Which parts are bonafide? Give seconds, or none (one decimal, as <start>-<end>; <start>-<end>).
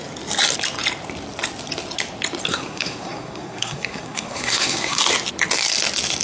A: 0.0-2.5; 5.0-6.2